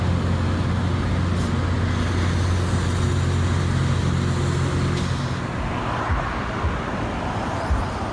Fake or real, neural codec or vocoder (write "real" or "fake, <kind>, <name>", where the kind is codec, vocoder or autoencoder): real